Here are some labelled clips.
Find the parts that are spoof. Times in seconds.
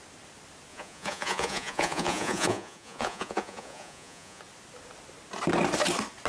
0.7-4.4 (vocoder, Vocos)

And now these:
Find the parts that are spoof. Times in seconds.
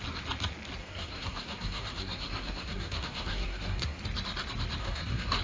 0.8-4.0 (codec, SNAC); 4.8-5.4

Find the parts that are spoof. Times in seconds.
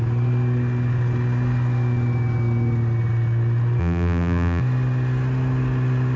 3.8-4.6 (vocoder, BigVGAN v2)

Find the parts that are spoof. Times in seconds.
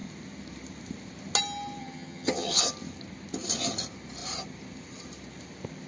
1.8-2.6 (vocoder, HiFi-GAN)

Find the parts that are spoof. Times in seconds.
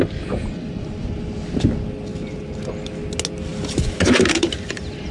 2.1-2.6 (vocoder, BigVGAN v2); 3.5-5.1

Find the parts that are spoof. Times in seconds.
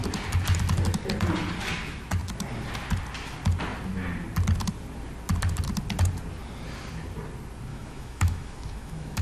7.7-9.2 (autoencoder, DAC-VAE)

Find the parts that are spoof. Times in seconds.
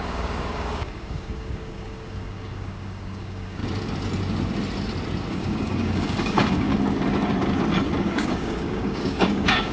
0.0-3.6 (codec, DAC); 5.3-6.7; 8.0-9.7